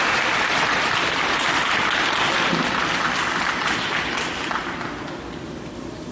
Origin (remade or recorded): recorded